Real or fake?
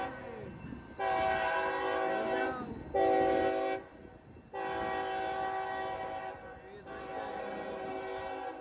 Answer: real